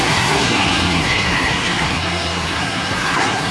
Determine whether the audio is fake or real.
fake